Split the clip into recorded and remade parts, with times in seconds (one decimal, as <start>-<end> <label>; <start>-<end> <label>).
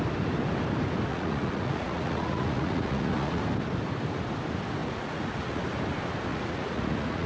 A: 0.0-1.1 recorded; 1.1-3.4 remade; 3.4-4.8 recorded; 4.8-5.6 remade; 5.6-6.3 recorded; 6.3-7.3 remade